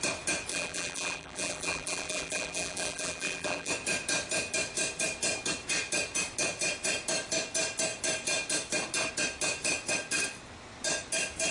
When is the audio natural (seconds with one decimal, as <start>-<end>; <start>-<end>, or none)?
0.0-0.5; 3.7-11.5